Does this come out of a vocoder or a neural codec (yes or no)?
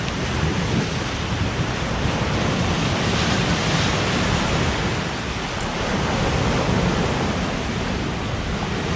no